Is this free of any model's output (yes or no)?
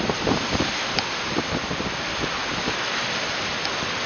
yes